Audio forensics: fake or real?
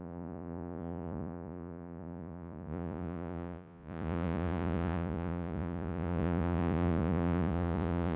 fake